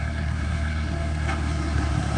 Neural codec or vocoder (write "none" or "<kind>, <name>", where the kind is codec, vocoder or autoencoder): codec, SNAC